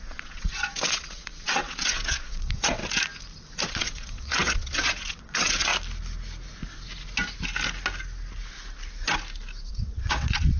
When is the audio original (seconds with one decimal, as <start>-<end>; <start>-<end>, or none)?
2.8-3.6; 5.7-9.7